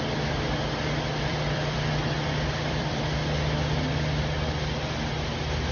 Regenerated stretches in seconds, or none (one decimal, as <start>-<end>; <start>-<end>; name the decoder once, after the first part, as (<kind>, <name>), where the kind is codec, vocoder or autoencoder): 1.3-3.2 (vocoder, BigVGAN v2)